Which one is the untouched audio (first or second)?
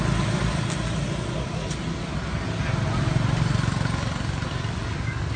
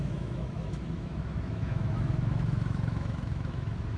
first